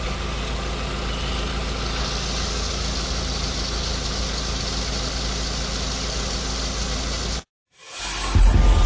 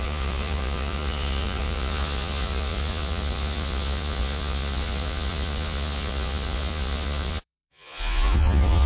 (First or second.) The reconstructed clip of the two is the second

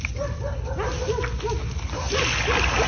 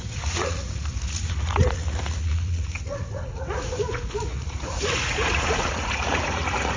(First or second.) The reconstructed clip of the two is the second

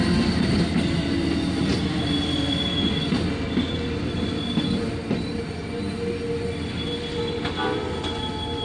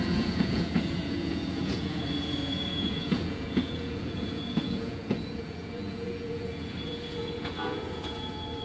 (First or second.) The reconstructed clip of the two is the second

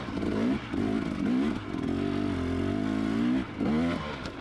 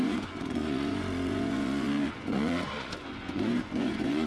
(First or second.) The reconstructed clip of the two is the second